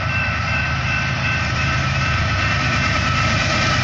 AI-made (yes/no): yes